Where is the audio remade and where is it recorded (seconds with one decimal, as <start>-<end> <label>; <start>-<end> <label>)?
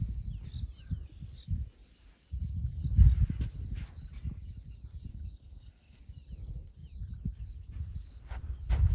0.0-5.1 recorded; 5.1-6.0 remade; 6.0-8.9 recorded